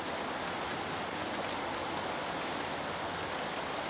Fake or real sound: real